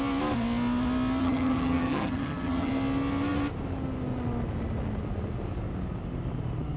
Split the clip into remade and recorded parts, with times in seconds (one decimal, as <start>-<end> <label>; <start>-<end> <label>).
0.0-1.2 recorded; 1.2-2.7 remade; 2.7-6.8 recorded